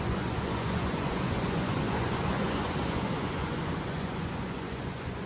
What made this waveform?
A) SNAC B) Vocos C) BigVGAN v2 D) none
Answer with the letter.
B